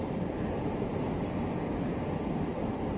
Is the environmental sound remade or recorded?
recorded